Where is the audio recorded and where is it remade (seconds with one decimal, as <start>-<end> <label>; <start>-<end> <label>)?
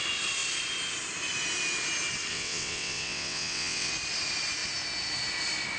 0.0-2.3 recorded; 2.3-3.9 remade; 3.9-5.8 recorded